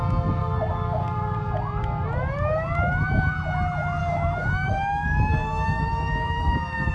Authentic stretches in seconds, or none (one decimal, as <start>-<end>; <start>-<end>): 0.0-0.4; 1.5-4.0